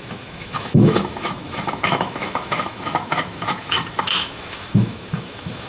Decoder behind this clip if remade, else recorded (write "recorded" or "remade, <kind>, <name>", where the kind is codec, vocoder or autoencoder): remade, autoencoder, DAC-VAE